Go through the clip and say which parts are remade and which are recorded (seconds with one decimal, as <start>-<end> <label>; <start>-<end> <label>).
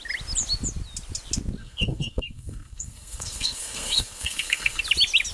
0.0-1.6 recorded; 1.6-4.8 remade; 4.8-5.3 recorded